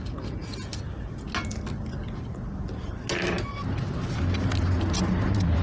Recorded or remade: recorded